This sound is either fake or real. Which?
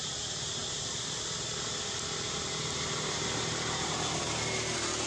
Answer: real